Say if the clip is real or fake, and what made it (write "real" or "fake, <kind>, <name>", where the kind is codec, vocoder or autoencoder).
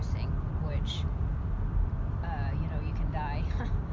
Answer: real